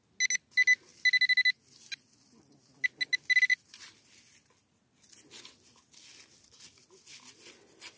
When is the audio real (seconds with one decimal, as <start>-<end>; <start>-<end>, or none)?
0.0-8.0